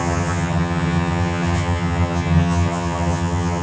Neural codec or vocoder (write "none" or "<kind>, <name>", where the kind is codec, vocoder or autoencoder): vocoder, HiFi-GAN